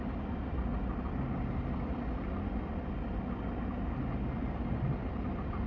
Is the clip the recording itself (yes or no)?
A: yes